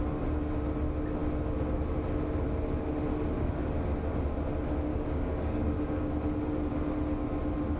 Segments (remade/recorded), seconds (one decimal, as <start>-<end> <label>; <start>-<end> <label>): 0.0-4.9 recorded; 4.9-6.1 remade; 6.1-7.8 recorded